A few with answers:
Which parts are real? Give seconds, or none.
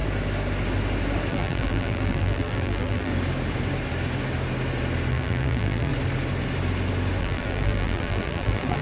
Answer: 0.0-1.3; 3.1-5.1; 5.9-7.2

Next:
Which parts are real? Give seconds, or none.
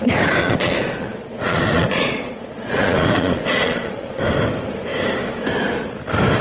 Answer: 0.0-0.4; 4.2-6.4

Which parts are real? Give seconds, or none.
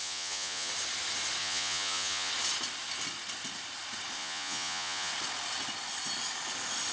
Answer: 0.7-1.4; 2.3-4.2; 5.1-6.9